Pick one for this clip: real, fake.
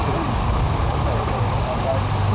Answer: real